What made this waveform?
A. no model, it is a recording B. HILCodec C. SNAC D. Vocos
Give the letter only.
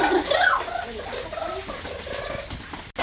A